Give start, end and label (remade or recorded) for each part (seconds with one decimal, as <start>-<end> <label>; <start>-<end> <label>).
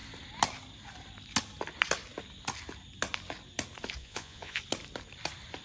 0.0-4.0 recorded; 4.0-4.6 remade; 4.6-5.6 recorded